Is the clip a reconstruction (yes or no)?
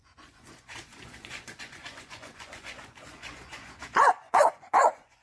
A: yes